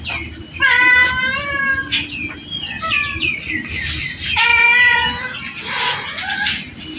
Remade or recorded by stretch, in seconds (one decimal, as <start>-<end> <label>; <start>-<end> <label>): 0.0-7.0 recorded